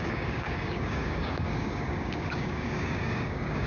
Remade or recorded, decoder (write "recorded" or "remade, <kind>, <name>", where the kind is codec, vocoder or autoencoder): remade, codec, DAC